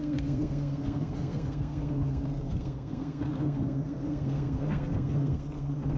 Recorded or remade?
remade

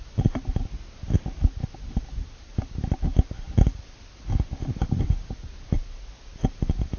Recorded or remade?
recorded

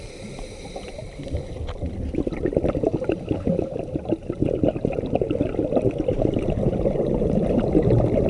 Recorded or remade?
recorded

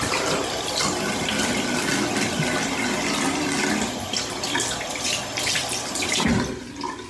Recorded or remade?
recorded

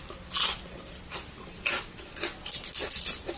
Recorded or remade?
recorded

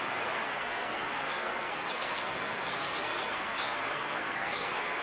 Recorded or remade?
remade